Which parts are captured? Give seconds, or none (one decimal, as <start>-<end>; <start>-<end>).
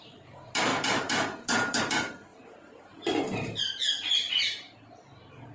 0.0-0.7; 1.8-2.3; 3.6-5.5